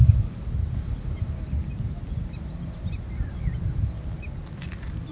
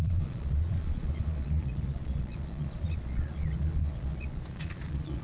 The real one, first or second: first